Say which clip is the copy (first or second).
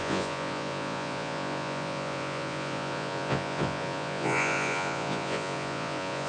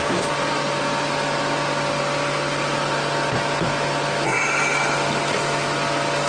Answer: first